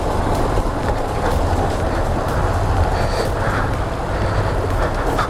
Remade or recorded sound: recorded